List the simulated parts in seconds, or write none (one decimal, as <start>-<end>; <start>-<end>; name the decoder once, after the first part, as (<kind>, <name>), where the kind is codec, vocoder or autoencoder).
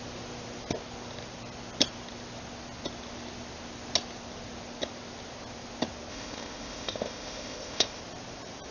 6.1-8.0 (codec, ZipCodec)